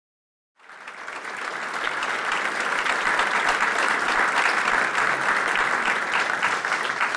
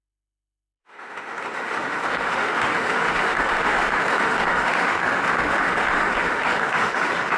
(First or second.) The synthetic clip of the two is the second